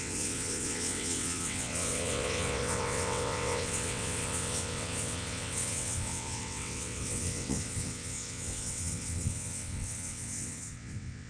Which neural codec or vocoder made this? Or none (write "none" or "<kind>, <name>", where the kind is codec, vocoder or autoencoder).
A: vocoder, WaveNeXt